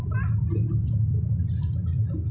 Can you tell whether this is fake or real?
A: real